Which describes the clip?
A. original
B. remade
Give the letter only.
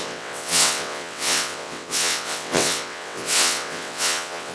B